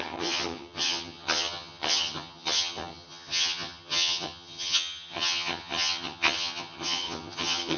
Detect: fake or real fake